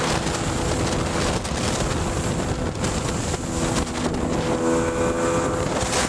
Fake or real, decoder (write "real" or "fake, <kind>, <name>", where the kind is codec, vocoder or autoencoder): real